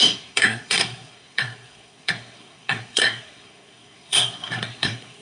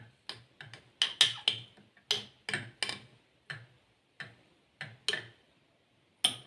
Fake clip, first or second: first